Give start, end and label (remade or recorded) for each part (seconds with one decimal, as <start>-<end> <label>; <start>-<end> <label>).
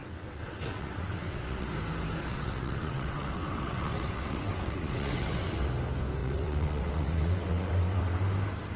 0.0-1.7 remade; 1.7-2.2 recorded; 2.2-5.7 remade; 5.7-6.2 recorded; 6.2-8.2 remade; 8.2-8.8 recorded